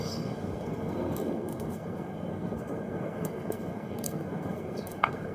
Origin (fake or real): fake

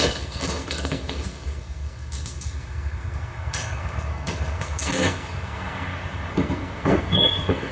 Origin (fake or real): fake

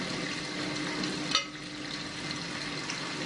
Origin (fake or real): real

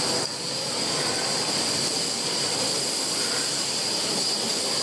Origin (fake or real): real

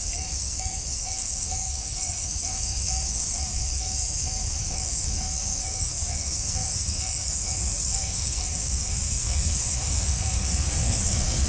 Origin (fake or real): fake